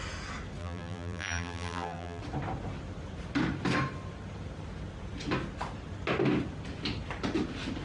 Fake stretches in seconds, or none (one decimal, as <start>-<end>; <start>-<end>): 0.6-2.2